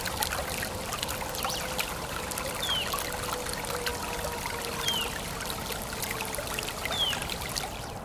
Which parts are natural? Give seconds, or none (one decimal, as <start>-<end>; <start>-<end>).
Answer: 0.0-8.0